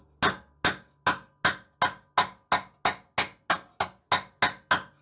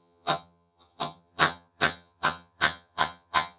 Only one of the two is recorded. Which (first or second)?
first